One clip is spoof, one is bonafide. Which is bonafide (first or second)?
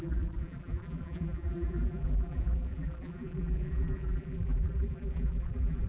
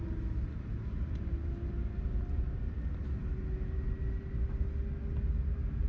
second